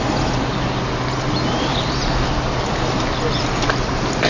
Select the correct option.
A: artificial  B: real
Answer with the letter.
B